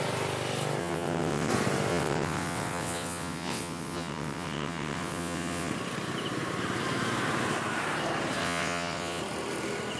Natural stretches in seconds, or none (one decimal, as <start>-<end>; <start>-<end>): 0.0-0.8; 1.5-1.9; 5.7-8.4; 9.2-10.0